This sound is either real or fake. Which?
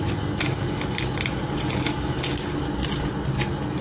real